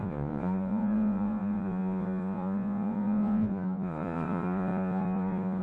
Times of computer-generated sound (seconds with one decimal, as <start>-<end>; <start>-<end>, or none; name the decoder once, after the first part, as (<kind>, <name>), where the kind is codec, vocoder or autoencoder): 0.0-5.6 (vocoder, Vocos)